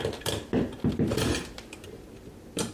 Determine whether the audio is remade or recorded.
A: remade